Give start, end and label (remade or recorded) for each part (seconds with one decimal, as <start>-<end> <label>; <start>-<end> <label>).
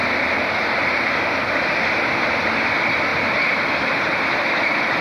0.0-5.0 recorded